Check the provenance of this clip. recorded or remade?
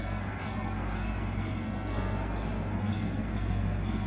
remade